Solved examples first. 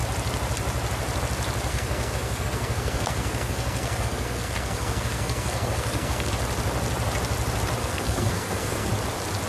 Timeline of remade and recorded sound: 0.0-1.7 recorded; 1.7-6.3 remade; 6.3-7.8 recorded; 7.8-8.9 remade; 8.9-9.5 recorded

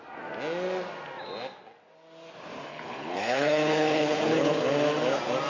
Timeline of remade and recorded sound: 0.0-2.7 recorded; 2.7-4.7 remade; 4.7-5.5 recorded

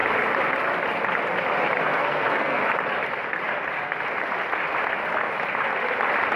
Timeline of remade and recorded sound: 0.0-1.8 recorded; 1.8-2.6 remade; 2.6-6.4 recorded

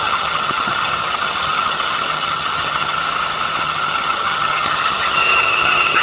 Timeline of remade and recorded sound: 0.0-3.0 remade; 3.0-3.6 recorded; 3.6-6.0 remade

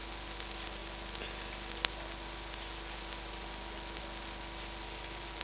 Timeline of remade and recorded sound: 0.0-5.4 recorded

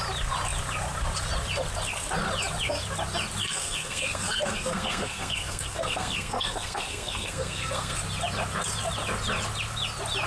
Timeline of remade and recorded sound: 0.0-3.4 recorded; 3.4-8.0 remade; 8.0-10.3 recorded